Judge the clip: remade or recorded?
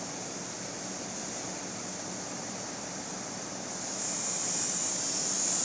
recorded